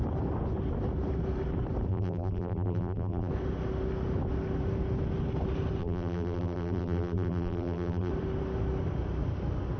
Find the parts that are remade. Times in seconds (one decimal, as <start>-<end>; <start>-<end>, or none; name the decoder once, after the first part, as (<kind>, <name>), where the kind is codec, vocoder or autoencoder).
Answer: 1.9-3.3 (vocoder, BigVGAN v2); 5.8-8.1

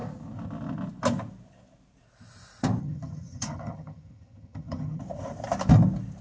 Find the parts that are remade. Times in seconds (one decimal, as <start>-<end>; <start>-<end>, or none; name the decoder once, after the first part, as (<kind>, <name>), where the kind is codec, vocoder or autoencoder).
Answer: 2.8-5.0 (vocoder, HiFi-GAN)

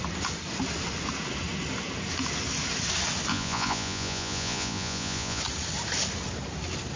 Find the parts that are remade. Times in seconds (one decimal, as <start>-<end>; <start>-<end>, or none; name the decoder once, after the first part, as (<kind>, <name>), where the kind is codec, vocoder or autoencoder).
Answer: 3.3-5.4 (vocoder, Vocos)

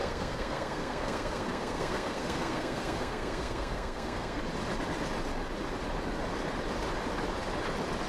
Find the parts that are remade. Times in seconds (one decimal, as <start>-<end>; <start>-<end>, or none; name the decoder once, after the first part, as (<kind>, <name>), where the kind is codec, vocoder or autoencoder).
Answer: 0.0-4.4 (codec, SNAC)